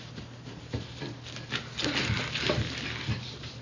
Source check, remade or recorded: recorded